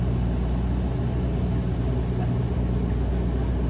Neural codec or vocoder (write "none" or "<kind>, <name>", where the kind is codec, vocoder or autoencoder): none